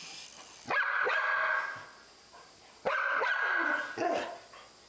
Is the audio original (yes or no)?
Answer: yes